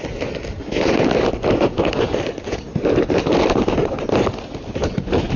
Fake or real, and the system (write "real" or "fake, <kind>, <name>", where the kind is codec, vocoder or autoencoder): real